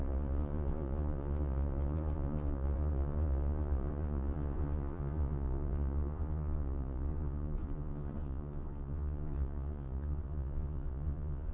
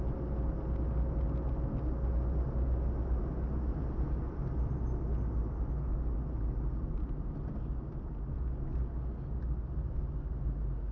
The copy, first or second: first